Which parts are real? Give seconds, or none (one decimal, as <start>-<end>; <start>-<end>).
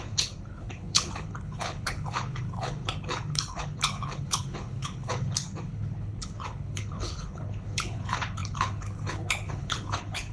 none